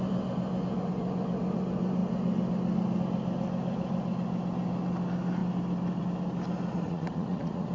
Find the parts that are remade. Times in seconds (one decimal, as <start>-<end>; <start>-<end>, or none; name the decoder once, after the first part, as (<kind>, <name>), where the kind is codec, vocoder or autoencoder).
6.7-7.7 (vocoder, Vocos)